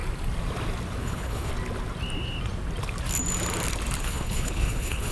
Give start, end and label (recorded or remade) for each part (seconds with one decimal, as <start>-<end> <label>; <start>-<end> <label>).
0.0-1.0 recorded; 1.0-1.5 remade; 1.5-4.0 recorded; 4.0-5.1 remade